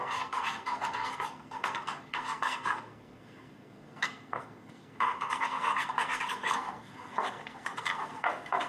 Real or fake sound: fake